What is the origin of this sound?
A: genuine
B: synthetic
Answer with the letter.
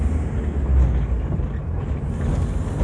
A